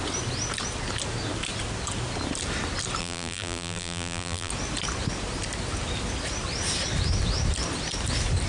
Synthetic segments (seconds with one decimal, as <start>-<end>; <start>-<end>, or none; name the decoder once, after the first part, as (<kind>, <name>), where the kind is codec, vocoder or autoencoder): 3.0-4.5 (vocoder, BigVGAN v2)